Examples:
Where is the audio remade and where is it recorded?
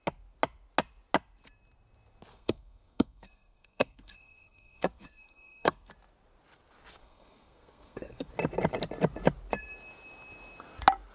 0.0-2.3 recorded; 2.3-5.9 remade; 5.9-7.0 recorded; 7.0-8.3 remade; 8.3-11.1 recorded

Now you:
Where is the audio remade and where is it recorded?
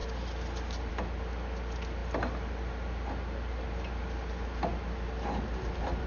0.0-6.1 recorded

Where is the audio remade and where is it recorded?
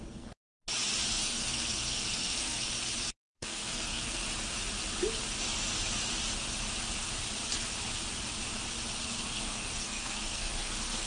0.0-0.5 remade; 0.5-1.1 recorded; 1.1-2.6 remade; 2.6-3.3 recorded; 3.3-4.2 remade; 4.2-9.0 recorded; 9.0-11.1 remade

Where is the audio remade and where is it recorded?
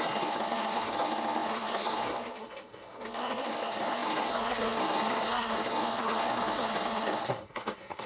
0.0-8.1 remade